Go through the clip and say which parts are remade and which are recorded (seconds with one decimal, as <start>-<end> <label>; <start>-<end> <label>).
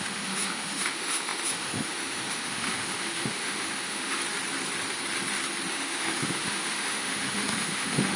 0.0-4.2 remade; 4.2-5.7 recorded; 5.7-8.2 remade